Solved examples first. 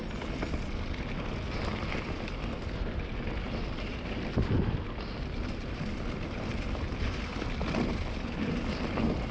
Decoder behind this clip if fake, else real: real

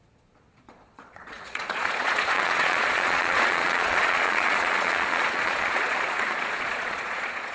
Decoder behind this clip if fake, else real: fake, vocoder, Vocos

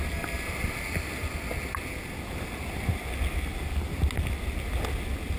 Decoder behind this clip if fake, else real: real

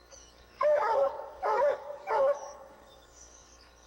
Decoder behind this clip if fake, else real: fake, codec, DAC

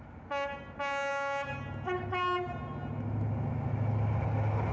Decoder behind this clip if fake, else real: real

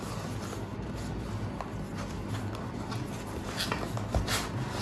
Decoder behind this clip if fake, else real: real